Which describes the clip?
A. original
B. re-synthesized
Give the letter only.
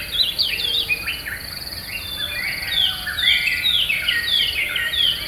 A